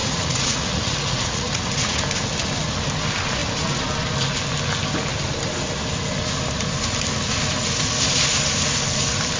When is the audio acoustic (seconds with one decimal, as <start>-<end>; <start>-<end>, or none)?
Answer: 2.0-9.4